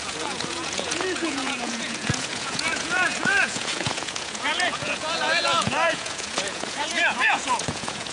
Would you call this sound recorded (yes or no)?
no